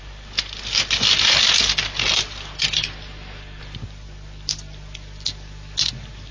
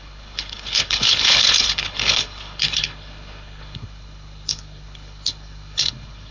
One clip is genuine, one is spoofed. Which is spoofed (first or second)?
second